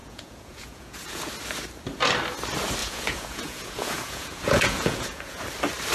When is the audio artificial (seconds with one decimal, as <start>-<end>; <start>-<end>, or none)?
0.0-1.3; 2.8-5.4